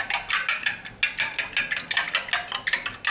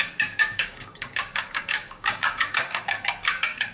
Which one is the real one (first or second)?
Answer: first